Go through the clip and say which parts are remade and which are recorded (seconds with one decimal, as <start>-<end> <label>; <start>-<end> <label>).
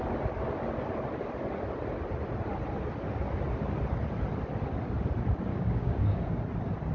0.0-5.5 recorded; 5.5-6.4 remade; 6.4-6.9 recorded